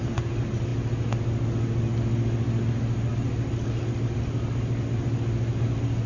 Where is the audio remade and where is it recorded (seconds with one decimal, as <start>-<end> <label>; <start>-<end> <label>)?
0.0-6.1 recorded